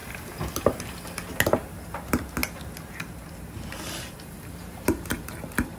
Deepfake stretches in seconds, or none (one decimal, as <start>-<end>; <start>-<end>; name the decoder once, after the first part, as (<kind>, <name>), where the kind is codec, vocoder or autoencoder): none